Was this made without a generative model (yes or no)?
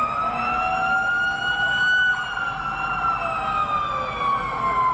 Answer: yes